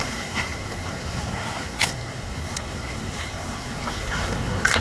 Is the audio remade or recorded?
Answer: remade